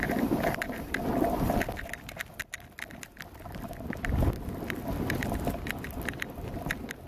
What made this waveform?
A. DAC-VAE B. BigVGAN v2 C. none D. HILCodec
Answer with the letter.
B